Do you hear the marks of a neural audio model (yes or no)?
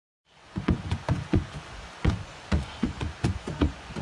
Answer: yes